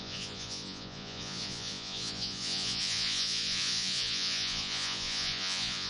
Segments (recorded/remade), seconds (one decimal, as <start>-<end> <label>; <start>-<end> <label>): 0.0-5.9 remade